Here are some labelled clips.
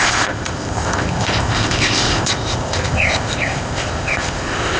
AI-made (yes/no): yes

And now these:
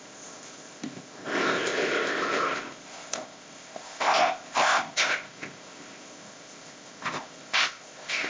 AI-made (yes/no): yes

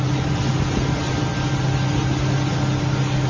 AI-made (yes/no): no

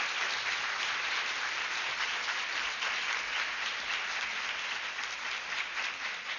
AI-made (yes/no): no